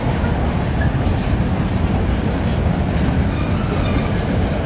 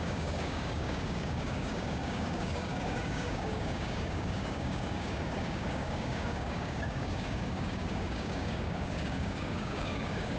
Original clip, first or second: first